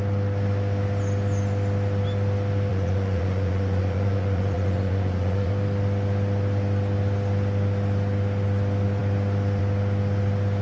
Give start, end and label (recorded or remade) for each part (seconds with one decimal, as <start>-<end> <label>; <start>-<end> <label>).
0.0-2.7 recorded; 2.7-5.5 remade; 5.5-10.6 recorded